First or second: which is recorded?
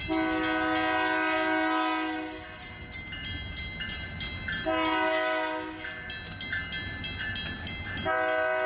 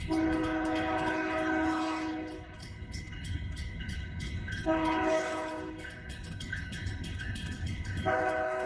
first